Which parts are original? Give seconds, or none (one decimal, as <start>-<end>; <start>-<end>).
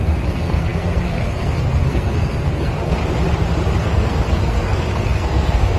3.0-3.8